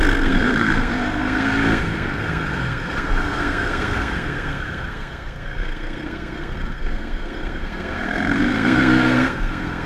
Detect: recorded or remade remade